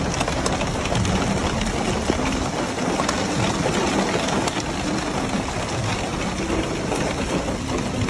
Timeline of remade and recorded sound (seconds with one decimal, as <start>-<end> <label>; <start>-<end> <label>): 0.0-8.1 recorded